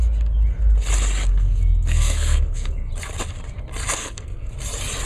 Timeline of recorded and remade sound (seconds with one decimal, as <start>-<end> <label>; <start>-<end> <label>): 0.0-1.3 recorded; 1.3-2.9 remade; 2.9-4.0 recorded; 4.0-4.5 remade; 4.5-5.1 recorded